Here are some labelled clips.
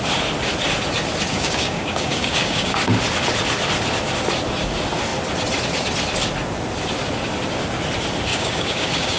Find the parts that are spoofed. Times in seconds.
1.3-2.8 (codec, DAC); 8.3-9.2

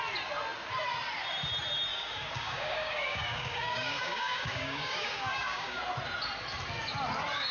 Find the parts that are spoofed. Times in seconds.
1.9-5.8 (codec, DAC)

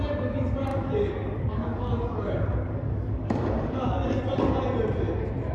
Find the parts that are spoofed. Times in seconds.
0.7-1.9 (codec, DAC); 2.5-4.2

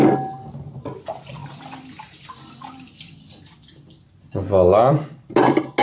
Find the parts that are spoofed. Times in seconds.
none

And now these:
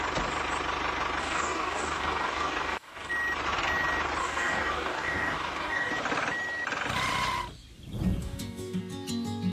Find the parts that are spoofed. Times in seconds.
1.2-3.1 (codec, DAC); 4.2-5.9; 8.2-8.8

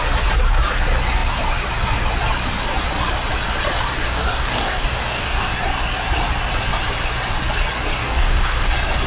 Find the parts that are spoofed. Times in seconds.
4.0-5.5 (codec, DAC); 8.0-8.7

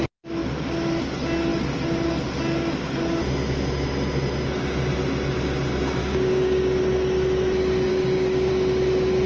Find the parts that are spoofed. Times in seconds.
6.0-6.8 (codec, DAC); 7.9-8.5